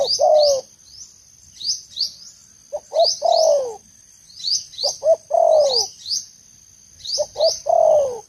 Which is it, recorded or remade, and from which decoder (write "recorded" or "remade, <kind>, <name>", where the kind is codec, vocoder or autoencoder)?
recorded